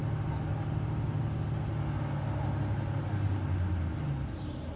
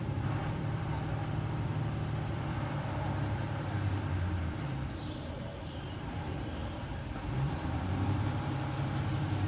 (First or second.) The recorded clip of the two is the first